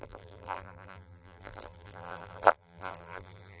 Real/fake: fake